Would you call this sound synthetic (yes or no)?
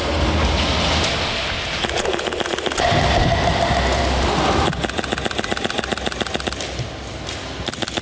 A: no